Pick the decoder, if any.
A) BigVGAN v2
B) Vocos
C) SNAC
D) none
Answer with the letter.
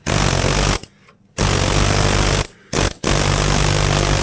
D